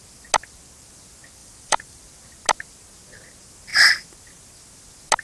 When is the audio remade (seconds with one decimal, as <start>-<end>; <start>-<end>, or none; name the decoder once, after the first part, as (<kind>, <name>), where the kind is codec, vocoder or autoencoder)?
1.4-2.0 (vocoder, BigVGAN v2)